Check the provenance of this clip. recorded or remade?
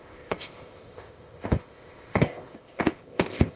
remade